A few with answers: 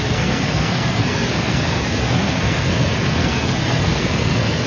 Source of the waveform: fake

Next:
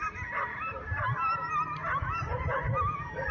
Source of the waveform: real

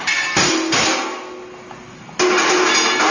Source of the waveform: real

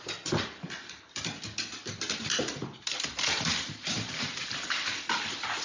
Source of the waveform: fake